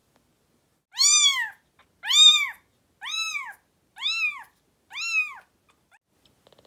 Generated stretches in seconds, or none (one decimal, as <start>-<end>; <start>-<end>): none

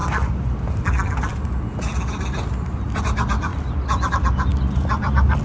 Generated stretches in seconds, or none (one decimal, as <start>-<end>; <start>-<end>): none

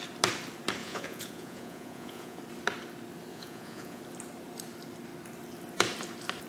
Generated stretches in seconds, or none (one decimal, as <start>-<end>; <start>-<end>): 0.8-2.4; 3.3-4.0

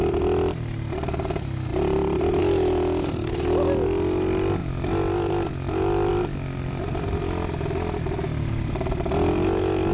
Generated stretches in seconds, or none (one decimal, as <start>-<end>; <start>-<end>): none